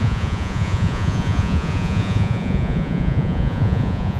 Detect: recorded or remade remade